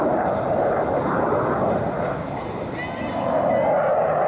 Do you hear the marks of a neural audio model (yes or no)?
no